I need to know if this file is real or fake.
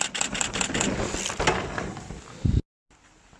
real